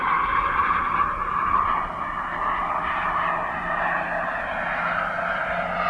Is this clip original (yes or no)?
yes